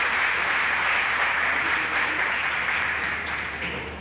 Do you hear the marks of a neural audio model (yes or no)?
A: yes